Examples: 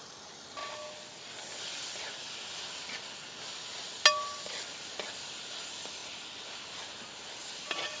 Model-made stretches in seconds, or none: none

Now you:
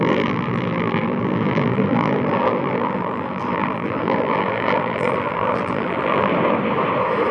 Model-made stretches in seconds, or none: 0.0-6.3 (vocoder, BigVGAN v2)

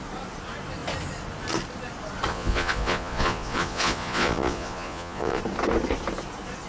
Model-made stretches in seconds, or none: 2.3-5.4 (vocoder, Vocos)

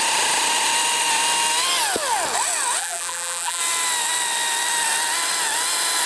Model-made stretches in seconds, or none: 2.8-3.6 (vocoder, BigVGAN v2)

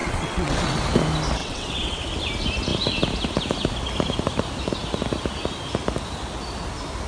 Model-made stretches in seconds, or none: 0.0-0.8 (vocoder, WaveNeXt); 1.4-2.0